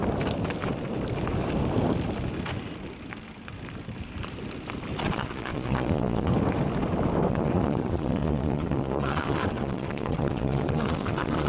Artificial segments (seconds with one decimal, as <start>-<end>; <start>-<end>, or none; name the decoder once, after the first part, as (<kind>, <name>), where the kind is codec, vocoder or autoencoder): 5.0-6.3 (vocoder, Vocos); 7.3-11.5